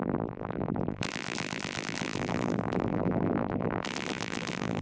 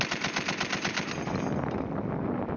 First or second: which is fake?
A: first